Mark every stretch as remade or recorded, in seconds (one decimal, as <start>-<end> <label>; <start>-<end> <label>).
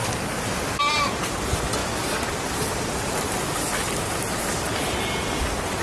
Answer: 0.0-1.8 recorded; 1.8-2.4 remade; 2.4-5.8 recorded